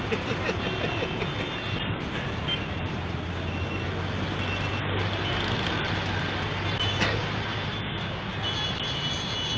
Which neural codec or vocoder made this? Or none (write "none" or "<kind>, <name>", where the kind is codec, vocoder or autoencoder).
none